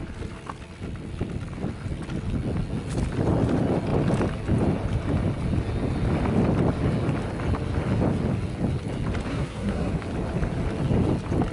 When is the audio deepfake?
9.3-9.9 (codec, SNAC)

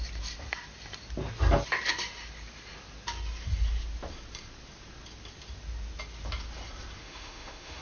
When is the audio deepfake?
7.0-7.8 (autoencoder, DAC-VAE)

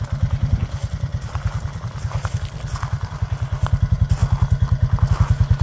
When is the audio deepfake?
none